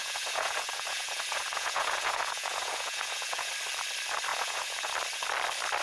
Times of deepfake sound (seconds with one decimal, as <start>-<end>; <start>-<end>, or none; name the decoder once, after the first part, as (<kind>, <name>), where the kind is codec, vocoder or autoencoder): 0.0-3.5 (vocoder, Vocos); 4.3-4.9